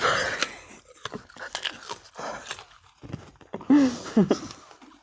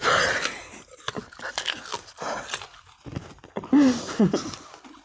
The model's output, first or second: second